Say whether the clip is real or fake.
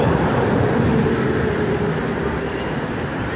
fake